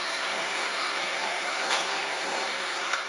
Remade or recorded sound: remade